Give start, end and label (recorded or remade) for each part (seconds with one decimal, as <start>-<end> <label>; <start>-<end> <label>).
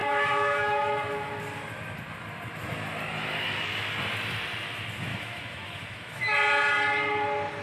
0.0-1.4 remade; 1.4-5.1 recorded; 5.1-6.2 remade; 6.2-7.6 recorded